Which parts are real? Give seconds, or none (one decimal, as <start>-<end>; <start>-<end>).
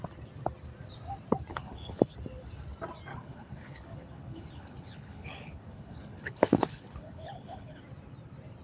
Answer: 0.0-1.5; 2.0-3.1; 7.8-8.6